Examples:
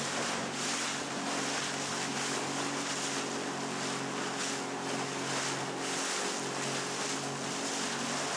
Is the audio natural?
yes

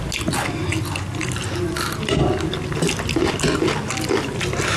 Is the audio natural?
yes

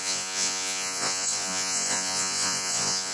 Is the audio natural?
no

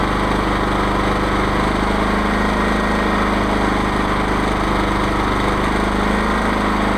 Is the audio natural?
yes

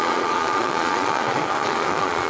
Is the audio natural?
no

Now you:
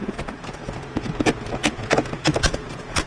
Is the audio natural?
no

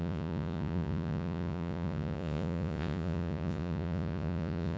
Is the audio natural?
no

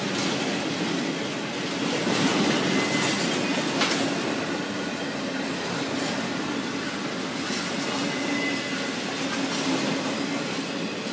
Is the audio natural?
yes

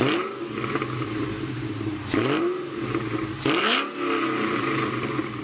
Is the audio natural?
yes